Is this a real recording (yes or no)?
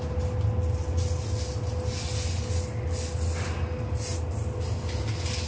yes